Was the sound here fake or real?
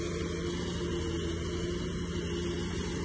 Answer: real